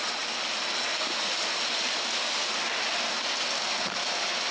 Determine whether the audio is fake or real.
real